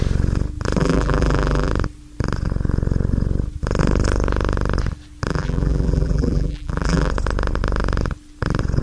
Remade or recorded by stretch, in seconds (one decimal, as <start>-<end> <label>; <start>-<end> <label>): 0.0-0.8 recorded; 0.8-1.7 remade; 1.7-5.3 recorded; 5.3-7.1 remade; 7.1-8.8 recorded